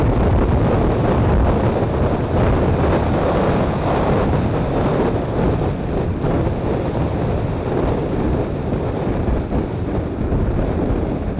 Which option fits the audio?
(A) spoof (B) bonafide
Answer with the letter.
B